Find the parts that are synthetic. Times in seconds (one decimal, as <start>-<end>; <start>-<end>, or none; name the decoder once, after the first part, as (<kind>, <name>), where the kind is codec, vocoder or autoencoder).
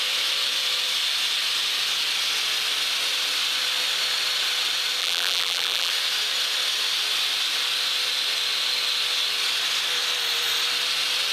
5.0-5.9 (vocoder, BigVGAN v2)